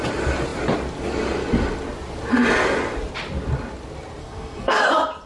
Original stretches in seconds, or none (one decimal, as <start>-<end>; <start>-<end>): 0.0-4.2; 4.8-5.3